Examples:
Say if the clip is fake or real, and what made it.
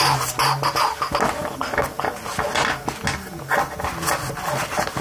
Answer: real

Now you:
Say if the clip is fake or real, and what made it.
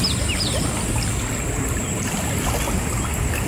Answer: real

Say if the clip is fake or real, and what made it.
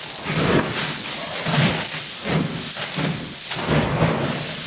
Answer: real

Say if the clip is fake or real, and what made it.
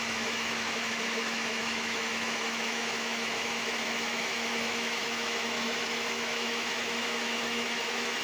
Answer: fake, autoencoder, DAC-VAE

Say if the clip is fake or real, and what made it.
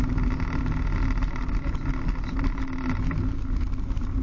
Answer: real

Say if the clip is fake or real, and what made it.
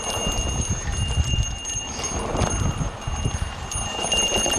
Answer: real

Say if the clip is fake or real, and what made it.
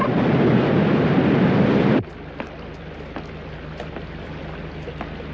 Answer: real